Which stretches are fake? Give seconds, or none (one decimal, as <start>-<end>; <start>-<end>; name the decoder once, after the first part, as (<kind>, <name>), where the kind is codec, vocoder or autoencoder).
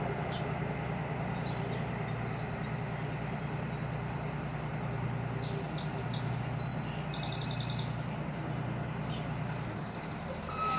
none